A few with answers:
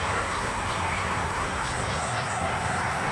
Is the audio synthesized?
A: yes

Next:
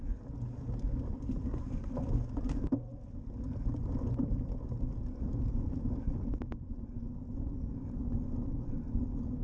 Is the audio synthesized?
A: no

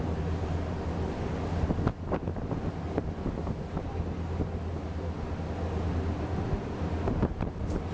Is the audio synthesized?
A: no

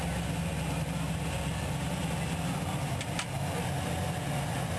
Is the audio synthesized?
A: no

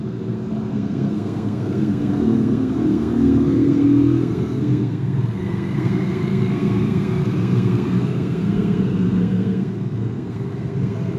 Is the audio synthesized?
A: yes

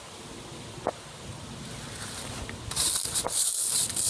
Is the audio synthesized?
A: no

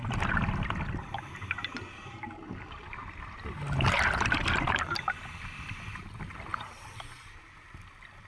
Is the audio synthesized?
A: no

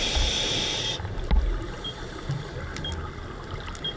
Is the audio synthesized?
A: no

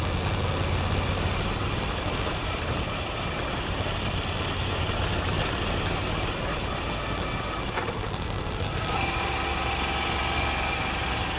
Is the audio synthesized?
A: no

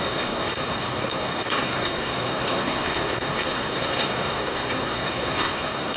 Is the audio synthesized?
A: yes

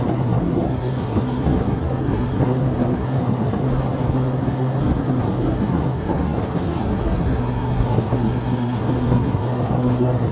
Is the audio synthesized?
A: yes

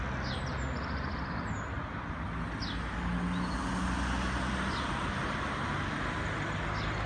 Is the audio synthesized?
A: no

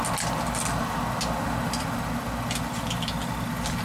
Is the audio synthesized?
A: no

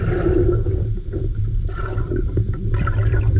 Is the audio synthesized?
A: no